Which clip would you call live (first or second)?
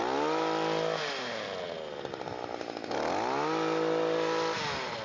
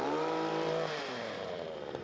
first